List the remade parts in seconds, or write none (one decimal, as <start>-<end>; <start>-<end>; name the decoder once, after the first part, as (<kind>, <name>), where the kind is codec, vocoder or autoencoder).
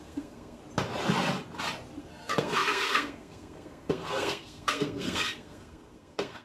0.0-0.6 (codec, SNAC); 2.0-6.4